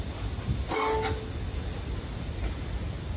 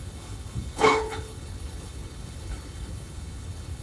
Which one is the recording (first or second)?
first